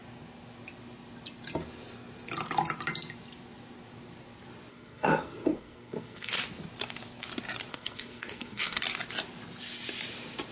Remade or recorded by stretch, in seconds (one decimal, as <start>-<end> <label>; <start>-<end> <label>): 0.0-4.7 recorded; 4.7-6.3 remade; 6.3-7.7 recorded; 7.7-8.8 remade; 8.8-10.5 recorded